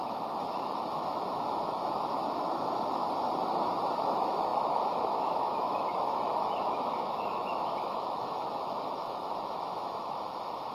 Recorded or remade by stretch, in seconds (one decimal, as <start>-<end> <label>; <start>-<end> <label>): 0.0-3.0 remade; 3.0-3.9 recorded; 3.9-10.7 remade